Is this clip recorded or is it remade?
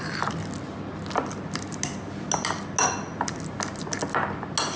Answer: recorded